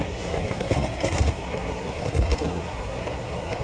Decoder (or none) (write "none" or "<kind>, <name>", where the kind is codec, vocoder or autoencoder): codec, SNAC